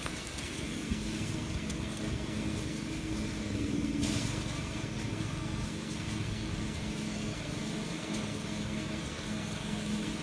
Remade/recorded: remade